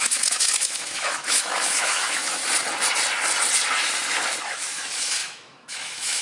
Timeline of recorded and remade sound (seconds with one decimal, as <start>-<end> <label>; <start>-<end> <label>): 0.0-2.4 remade; 2.4-4.4 recorded; 4.4-6.2 remade